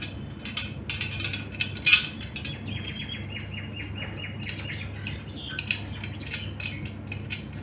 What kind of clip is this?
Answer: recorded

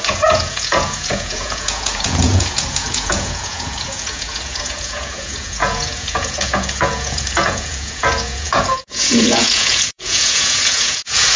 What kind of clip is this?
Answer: remade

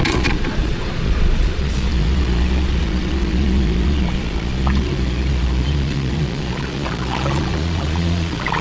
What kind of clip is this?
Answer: remade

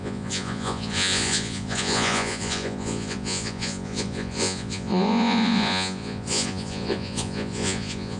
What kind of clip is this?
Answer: remade